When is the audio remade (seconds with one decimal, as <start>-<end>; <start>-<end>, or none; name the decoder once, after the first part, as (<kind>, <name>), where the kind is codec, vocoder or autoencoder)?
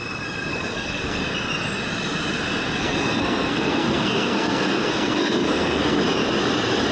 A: 0.5-1.2 (codec, SNAC); 2.8-6.0